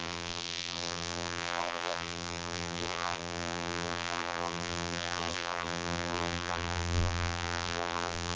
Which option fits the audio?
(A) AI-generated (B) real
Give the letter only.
A